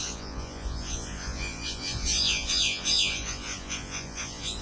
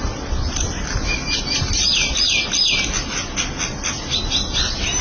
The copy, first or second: first